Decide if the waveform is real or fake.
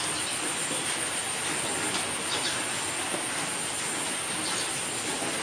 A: real